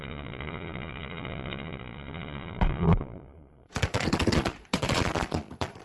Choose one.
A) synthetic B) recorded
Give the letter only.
A